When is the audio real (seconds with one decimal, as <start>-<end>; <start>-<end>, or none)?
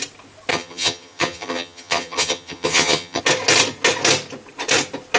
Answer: 0.0-0.5; 3.2-5.2